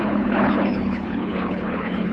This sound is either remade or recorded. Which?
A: remade